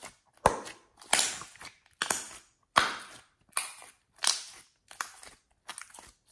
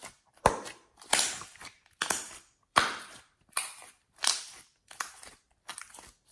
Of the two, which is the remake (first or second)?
second